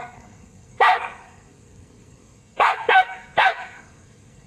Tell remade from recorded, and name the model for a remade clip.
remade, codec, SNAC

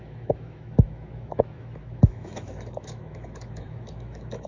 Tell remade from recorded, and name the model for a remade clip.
remade, autoencoder, DAC-VAE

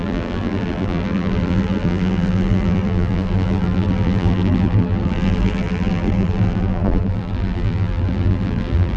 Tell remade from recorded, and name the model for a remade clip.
remade, vocoder, BigVGAN v2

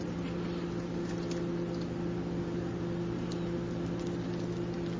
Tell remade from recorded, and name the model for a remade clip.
recorded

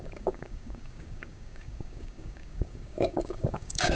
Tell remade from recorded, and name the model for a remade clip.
remade, codec, DAC